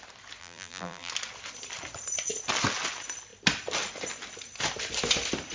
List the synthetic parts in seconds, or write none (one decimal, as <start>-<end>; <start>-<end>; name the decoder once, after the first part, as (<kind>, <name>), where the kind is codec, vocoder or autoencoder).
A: 0.4-1.1 (vocoder, BigVGAN v2)